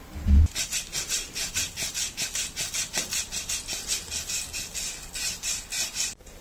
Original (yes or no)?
yes